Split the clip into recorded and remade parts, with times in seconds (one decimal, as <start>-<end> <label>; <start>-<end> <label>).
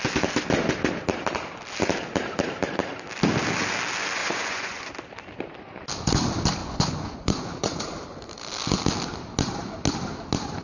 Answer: 0.0-4.2 recorded; 4.2-4.9 remade; 4.9-6.6 recorded; 6.6-7.8 remade; 7.8-10.6 recorded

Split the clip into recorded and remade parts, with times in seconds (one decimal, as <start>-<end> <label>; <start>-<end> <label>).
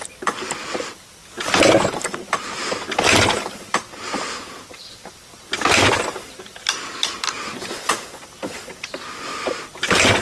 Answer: 0.0-7.5 recorded; 7.5-8.2 remade; 8.2-10.2 recorded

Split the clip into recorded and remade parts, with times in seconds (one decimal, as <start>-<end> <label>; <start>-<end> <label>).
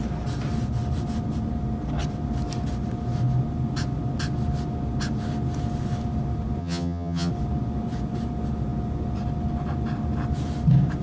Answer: 0.0-6.6 recorded; 6.6-7.3 remade; 7.3-11.0 recorded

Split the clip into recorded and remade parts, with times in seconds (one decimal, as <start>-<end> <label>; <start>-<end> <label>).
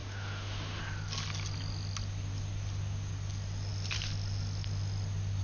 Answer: 0.0-0.8 remade; 0.8-5.4 recorded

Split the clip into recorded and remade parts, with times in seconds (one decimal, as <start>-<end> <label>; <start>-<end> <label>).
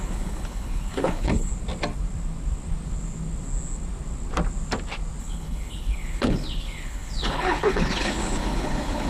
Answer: 0.0-1.5 remade; 1.5-5.2 recorded; 5.2-9.1 remade